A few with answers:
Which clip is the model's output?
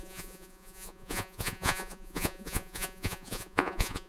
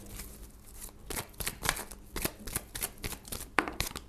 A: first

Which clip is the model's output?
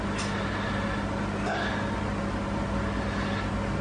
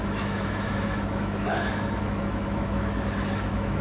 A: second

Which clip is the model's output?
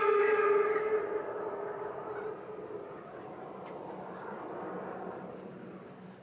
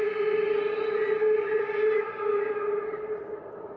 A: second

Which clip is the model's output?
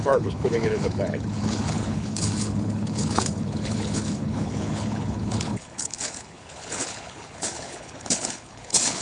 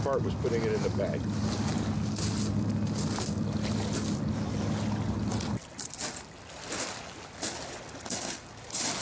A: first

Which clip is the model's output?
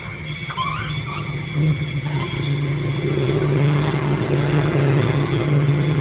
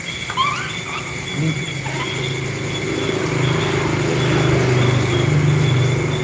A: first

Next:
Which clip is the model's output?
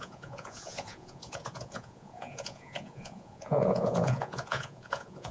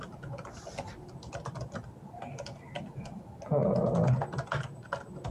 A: first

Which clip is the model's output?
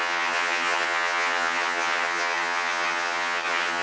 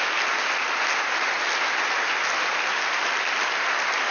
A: first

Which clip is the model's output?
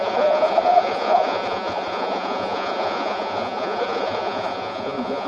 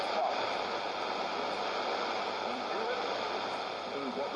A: first